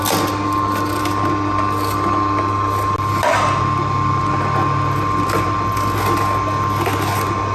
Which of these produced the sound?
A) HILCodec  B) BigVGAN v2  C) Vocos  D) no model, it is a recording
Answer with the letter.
D